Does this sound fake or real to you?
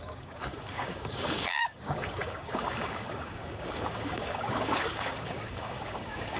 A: fake